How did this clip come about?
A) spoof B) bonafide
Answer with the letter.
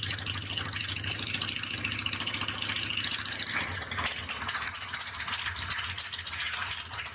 B